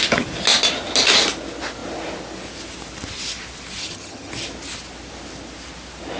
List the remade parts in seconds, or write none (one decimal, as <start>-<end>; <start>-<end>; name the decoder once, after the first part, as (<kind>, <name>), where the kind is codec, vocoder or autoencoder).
3.8-4.3 (vocoder, HiFi-GAN)